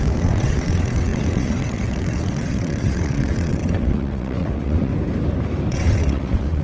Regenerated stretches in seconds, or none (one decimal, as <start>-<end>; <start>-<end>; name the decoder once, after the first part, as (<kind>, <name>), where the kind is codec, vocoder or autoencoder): 0.0-4.9 (vocoder, WaveNeXt); 5.7-6.6